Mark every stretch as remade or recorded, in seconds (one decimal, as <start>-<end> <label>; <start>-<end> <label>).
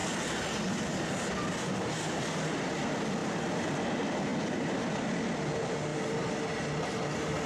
0.0-7.5 recorded